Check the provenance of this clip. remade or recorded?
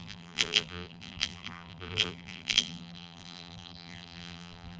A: remade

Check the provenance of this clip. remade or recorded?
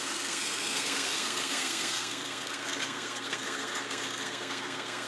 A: remade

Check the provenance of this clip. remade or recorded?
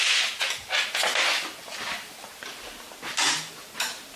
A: recorded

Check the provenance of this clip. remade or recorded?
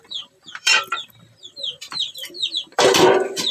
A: remade